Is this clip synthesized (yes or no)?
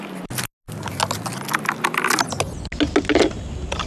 no